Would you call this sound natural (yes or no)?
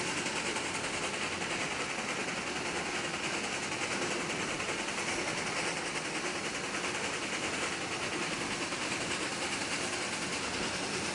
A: yes